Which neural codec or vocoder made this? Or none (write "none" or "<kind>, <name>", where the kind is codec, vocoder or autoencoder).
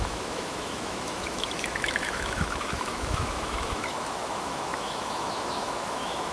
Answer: autoencoder, DAC-VAE